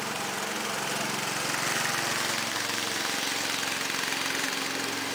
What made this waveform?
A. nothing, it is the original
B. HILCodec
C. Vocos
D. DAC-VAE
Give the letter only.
A